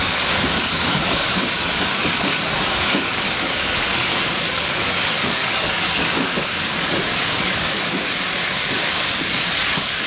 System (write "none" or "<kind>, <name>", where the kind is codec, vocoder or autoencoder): codec, DAC